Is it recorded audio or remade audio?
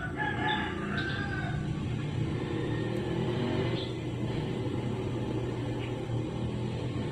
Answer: recorded